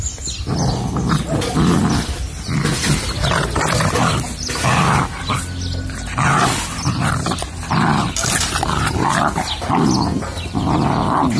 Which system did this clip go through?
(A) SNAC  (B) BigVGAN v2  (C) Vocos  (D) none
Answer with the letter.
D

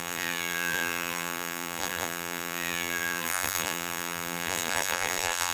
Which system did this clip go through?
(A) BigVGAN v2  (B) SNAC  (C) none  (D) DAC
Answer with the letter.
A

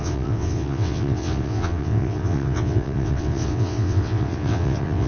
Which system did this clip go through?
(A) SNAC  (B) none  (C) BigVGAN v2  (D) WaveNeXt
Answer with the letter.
D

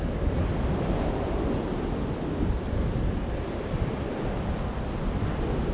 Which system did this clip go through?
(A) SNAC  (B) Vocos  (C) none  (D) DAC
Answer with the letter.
C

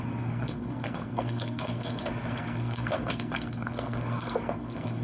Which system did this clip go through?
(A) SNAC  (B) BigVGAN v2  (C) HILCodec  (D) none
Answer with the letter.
A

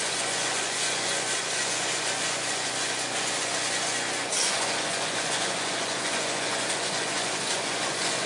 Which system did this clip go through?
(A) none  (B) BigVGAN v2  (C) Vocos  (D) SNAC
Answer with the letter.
C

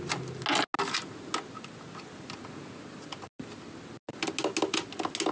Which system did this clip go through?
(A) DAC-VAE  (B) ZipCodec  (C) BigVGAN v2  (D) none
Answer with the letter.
D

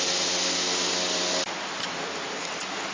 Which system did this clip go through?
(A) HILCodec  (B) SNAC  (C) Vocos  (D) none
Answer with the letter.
D